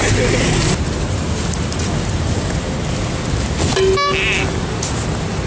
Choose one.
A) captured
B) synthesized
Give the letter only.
A